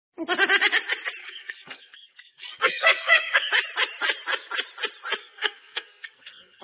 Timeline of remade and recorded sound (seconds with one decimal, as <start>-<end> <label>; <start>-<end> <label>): 0.0-1.2 recorded; 1.2-3.5 remade; 3.5-5.2 recorded; 5.2-6.6 remade